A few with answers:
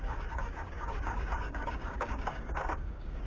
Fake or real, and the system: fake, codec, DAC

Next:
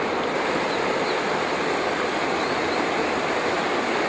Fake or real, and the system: real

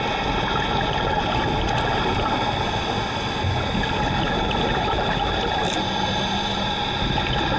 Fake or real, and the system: real